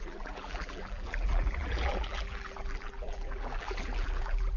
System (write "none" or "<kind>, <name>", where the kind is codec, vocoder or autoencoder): vocoder, BigVGAN v2